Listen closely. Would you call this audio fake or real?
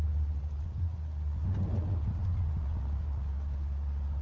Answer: real